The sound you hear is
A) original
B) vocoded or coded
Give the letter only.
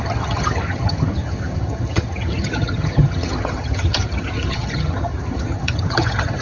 B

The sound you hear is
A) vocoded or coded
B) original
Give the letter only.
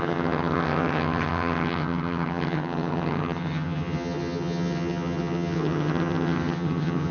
A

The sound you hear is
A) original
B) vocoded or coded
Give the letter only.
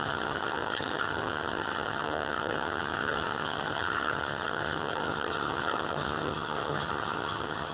B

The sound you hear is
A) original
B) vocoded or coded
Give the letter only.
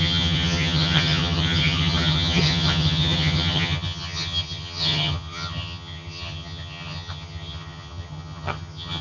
B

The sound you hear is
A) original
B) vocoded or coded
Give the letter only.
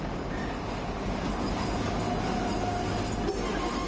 A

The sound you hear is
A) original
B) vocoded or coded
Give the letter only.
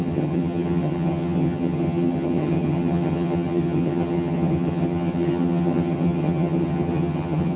B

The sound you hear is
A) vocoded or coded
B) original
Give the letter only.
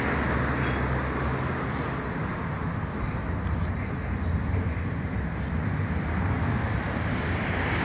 B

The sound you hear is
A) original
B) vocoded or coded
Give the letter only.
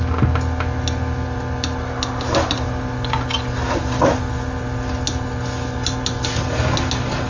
A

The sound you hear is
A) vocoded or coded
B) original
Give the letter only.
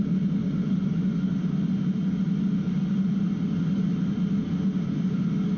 B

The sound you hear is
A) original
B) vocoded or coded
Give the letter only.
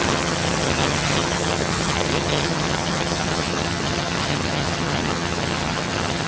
B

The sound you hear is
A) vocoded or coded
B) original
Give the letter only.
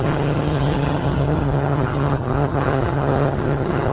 A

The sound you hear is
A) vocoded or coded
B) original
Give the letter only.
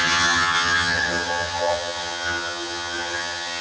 A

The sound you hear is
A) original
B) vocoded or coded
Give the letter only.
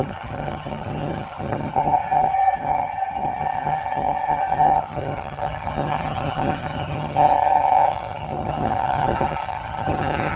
B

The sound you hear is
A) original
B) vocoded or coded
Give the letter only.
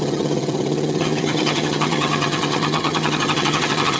B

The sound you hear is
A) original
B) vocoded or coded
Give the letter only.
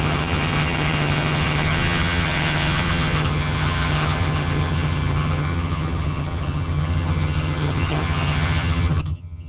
B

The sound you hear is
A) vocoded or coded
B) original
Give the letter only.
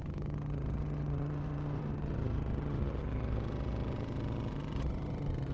A